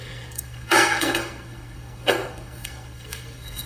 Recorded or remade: remade